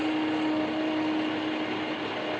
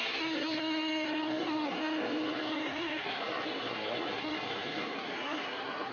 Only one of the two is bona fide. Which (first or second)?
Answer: first